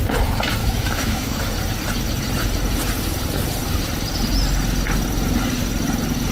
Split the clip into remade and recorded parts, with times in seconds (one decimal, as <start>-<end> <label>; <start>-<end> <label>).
0.0-0.6 recorded; 0.6-1.4 remade; 1.4-6.3 recorded

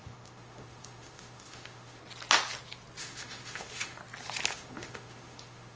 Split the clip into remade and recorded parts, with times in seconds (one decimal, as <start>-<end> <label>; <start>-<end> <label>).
0.0-2.0 remade; 2.0-3.0 recorded; 3.0-4.0 remade; 4.0-4.5 recorded; 4.5-5.8 remade